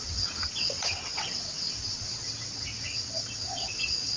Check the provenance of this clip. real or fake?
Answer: fake